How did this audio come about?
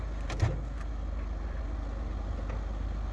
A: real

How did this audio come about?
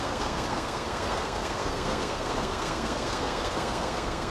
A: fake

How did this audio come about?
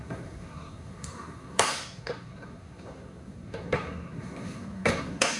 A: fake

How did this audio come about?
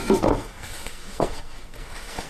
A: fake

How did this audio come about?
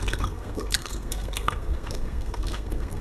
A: fake